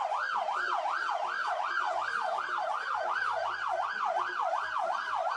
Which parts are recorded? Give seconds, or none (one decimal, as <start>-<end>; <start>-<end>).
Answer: 0.0-1.7; 2.4-5.4